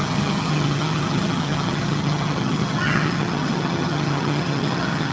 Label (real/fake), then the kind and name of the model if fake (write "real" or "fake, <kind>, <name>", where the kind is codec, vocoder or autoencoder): fake, vocoder, HiFi-GAN